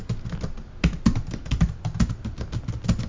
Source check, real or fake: real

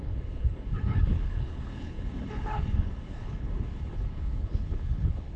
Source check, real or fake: fake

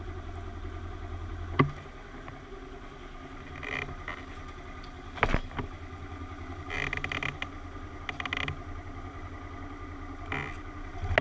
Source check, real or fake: real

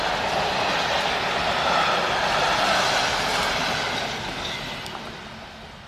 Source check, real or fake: real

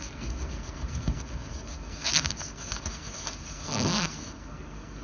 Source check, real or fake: fake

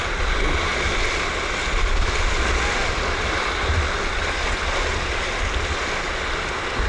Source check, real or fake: real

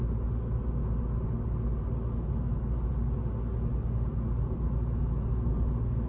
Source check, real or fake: real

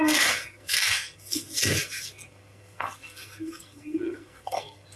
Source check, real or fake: fake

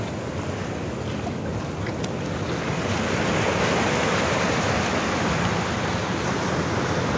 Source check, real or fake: real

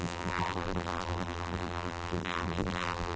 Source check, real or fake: fake